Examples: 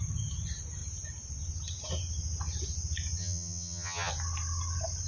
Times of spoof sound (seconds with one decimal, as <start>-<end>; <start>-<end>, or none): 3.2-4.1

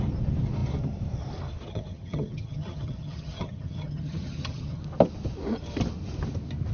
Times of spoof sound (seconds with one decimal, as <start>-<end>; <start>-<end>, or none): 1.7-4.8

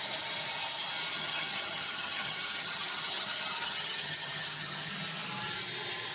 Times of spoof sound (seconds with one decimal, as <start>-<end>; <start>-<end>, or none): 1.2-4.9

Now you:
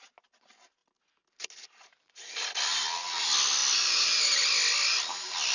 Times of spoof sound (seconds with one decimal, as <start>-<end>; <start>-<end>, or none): none

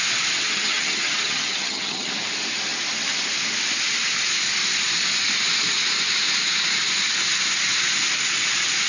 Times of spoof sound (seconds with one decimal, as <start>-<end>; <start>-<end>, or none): 0.5-2.1

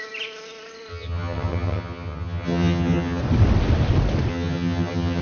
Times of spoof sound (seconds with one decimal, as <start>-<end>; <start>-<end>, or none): 0.9-3.2; 4.3-5.2

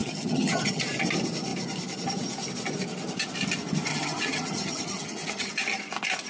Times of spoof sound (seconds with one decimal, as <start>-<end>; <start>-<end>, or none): 0.0-0.8; 3.9-5.5